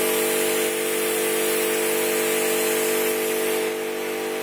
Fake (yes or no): no